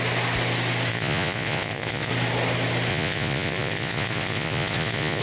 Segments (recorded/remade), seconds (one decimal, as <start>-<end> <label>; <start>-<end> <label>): 0.0-0.9 recorded; 0.9-2.1 remade; 2.1-2.9 recorded; 2.9-5.2 remade